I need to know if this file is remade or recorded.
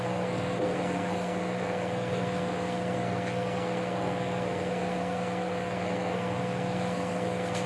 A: remade